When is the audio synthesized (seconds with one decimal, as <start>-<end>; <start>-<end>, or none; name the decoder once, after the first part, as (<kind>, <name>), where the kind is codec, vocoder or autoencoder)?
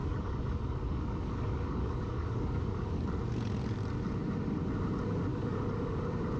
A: 0.0-3.1 (codec, DAC); 5.3-6.0